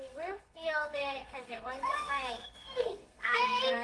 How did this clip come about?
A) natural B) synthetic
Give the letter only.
B